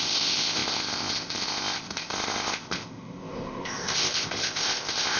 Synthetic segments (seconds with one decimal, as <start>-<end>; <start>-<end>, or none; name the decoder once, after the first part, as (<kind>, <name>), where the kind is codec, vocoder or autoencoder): 0.0-5.2 (codec, ZipCodec)